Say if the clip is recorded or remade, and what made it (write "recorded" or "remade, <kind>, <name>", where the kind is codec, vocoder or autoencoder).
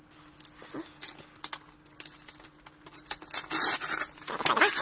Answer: recorded